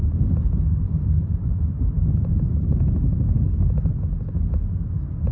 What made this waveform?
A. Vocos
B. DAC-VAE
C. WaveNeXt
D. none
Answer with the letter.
D